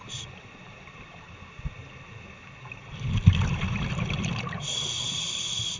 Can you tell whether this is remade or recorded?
recorded